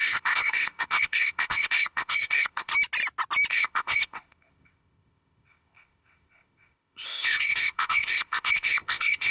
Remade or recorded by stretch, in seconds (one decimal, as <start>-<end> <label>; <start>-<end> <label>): 0.0-2.7 remade; 2.7-3.5 recorded; 3.5-9.3 remade